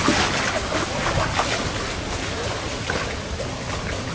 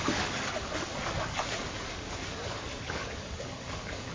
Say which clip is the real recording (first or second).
first